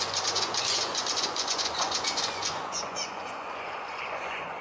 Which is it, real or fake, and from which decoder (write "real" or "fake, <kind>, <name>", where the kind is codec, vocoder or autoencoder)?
fake, vocoder, Vocos